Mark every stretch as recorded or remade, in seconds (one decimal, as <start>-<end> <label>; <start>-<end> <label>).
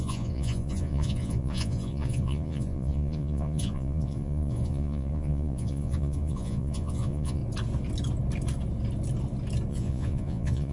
0.0-7.4 remade; 7.4-9.7 recorded; 9.7-10.7 remade